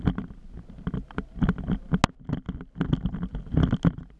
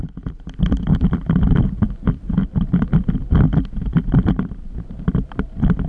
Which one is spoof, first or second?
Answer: second